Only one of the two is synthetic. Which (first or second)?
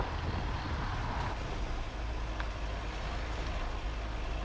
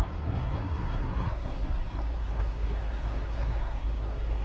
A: second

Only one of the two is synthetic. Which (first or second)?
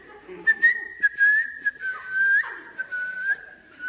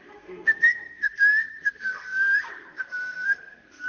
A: second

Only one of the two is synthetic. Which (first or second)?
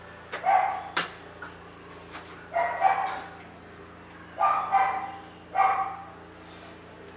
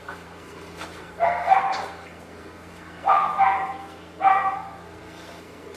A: second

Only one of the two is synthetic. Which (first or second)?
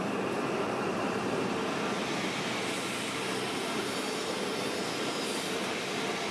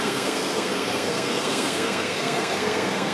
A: second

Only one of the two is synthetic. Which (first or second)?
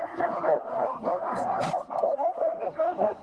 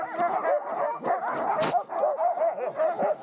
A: first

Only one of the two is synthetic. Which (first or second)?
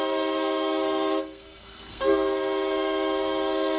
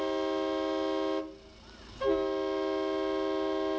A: first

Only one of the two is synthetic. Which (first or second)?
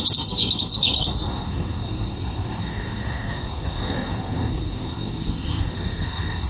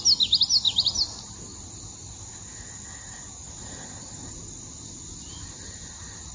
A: first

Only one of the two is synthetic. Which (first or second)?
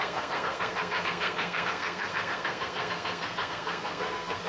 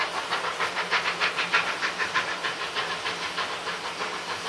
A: first